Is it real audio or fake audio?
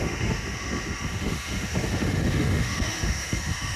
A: fake